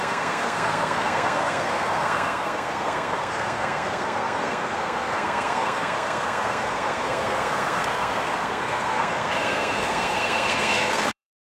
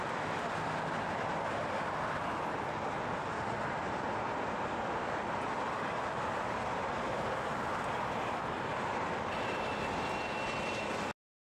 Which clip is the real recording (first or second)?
second